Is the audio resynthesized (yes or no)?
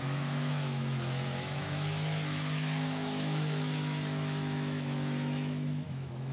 yes